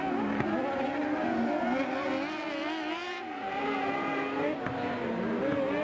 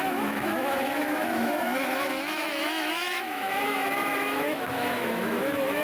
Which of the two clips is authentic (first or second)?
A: first